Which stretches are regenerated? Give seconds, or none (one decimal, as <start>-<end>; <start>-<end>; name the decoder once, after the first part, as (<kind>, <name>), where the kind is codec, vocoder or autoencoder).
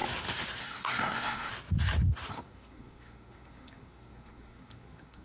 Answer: 0.6-1.5 (codec, SNAC); 2.3-5.2